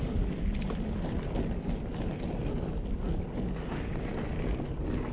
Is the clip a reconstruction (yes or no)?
no